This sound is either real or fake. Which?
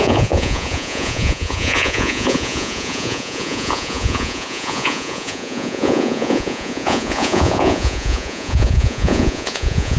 fake